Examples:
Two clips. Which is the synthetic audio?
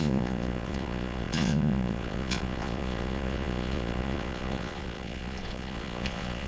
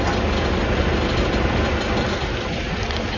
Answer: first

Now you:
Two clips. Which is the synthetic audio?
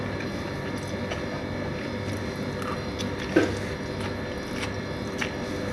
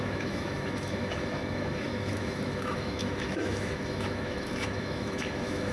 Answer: second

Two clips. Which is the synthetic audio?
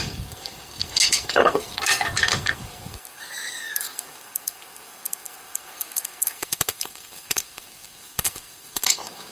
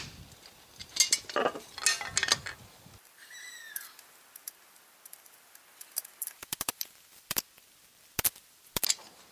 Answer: first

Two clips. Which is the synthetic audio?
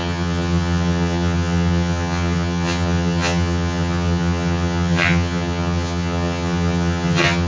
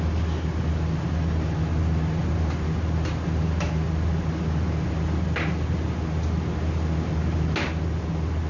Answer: first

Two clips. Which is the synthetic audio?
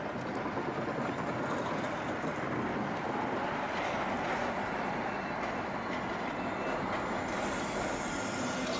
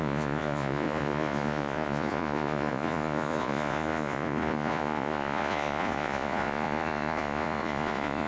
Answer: second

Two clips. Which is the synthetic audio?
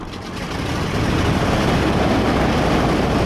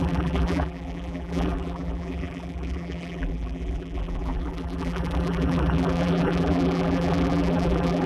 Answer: second